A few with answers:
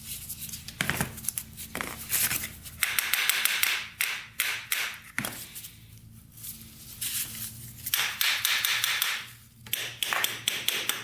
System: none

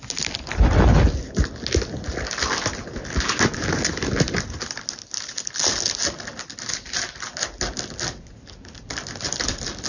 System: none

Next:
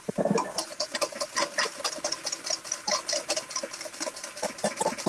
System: none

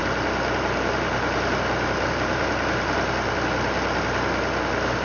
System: none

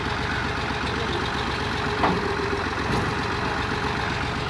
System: none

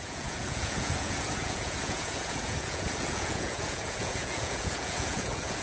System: vocoder, Vocos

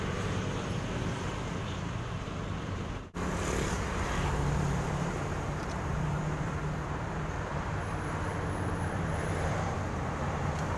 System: vocoder, BigVGAN v2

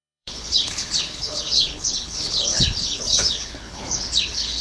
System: codec, HILCodec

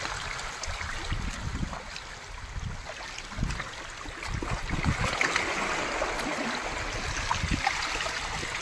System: none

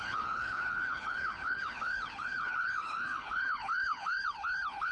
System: codec, HILCodec